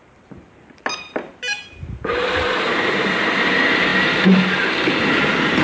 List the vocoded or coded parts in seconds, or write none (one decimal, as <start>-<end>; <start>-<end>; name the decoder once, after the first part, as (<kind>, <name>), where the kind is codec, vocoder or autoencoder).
0.0-3.9 (vocoder, BigVGAN v2); 5.0-5.6